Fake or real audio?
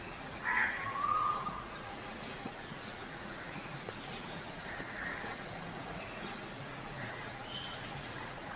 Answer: fake